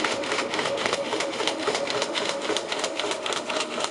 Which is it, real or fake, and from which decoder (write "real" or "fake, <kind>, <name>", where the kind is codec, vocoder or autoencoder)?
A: fake, autoencoder, DAC-VAE